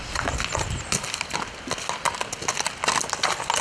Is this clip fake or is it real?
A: real